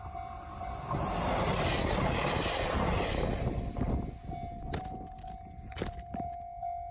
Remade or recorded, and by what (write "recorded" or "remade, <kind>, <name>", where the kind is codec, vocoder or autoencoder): recorded